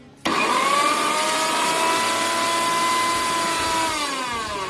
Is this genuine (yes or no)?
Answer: yes